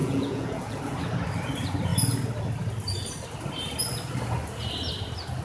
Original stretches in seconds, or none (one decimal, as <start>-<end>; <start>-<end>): 0.8-5.4